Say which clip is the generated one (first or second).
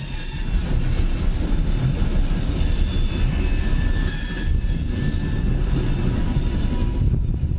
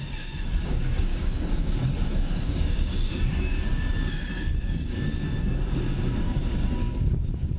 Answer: second